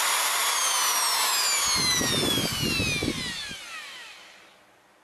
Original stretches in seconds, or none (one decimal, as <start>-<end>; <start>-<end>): 0.0-5.0